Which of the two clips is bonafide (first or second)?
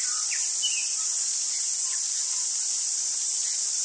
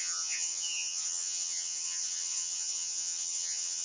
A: first